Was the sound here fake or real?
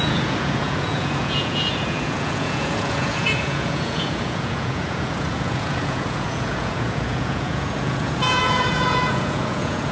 fake